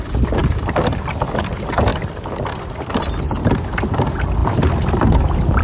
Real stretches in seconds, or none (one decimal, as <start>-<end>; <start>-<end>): 0.0-0.4; 1.4-5.6